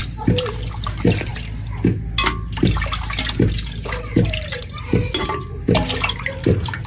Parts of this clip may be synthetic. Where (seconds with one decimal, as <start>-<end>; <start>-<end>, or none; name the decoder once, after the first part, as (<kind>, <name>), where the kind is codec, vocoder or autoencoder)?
none